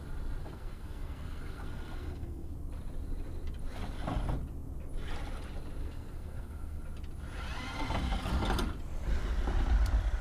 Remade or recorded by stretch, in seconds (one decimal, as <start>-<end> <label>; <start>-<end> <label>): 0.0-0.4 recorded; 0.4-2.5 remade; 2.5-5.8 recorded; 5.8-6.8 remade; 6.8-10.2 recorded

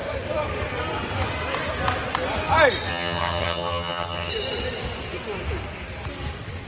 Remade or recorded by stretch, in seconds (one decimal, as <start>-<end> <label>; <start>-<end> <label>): 0.0-2.9 recorded; 2.9-4.3 remade; 4.3-6.7 recorded

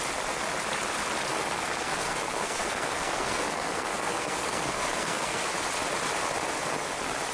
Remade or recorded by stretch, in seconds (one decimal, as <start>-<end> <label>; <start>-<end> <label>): 0.0-1.3 recorded; 1.3-5.5 remade; 5.5-7.3 recorded

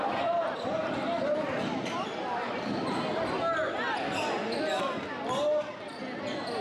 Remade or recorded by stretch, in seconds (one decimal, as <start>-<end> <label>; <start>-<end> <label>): 0.0-6.6 recorded